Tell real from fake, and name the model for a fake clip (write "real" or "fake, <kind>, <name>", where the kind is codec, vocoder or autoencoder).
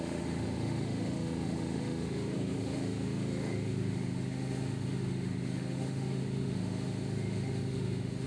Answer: fake, autoencoder, DAC-VAE